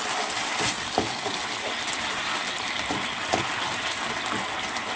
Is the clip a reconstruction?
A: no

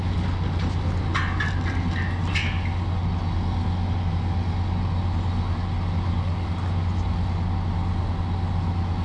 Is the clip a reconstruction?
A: no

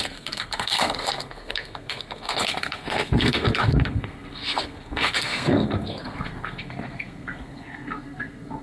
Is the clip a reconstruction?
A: yes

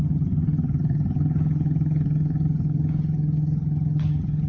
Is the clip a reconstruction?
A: yes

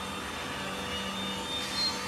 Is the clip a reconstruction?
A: no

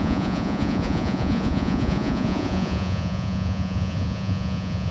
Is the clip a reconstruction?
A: yes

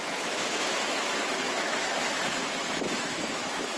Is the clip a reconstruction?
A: yes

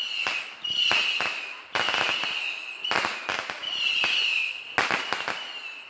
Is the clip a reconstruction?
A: no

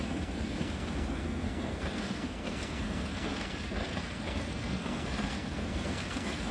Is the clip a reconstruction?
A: yes